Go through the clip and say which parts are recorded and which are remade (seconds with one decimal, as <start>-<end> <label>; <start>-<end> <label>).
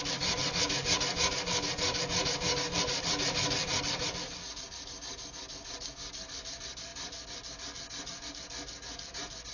0.0-9.5 recorded